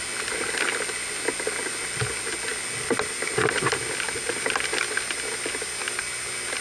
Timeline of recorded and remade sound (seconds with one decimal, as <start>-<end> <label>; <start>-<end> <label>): 0.0-6.6 recorded

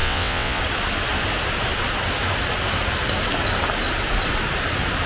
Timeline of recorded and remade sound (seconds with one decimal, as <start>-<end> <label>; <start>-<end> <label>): 0.0-0.6 remade; 0.6-5.1 recorded

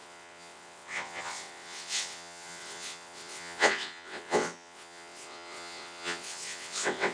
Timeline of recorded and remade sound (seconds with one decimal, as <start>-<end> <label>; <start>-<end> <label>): 0.0-7.1 remade